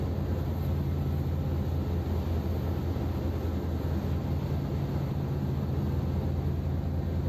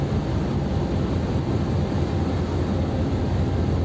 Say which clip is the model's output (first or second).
second